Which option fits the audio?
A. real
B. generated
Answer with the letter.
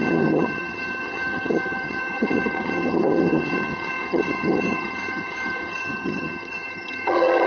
B